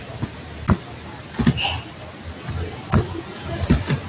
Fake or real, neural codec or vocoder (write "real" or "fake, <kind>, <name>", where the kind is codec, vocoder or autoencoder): real